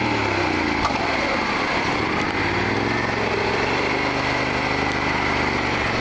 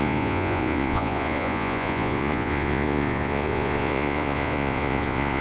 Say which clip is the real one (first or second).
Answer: first